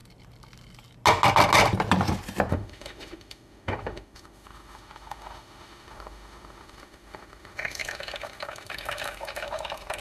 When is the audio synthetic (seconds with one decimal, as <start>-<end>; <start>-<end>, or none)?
2.5-10.0